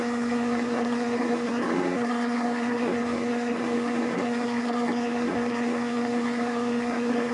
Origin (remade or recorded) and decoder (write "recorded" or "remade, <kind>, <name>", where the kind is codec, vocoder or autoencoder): remade, codec, SNAC